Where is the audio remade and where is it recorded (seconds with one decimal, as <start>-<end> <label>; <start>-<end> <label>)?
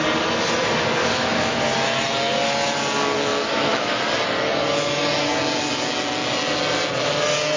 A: 0.0-1.0 recorded; 1.0-1.6 remade; 1.6-3.3 recorded; 3.3-4.0 remade; 4.0-7.6 recorded